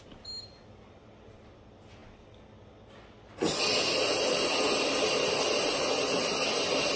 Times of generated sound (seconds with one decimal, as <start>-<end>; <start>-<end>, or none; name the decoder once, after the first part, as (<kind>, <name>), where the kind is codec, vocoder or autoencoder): none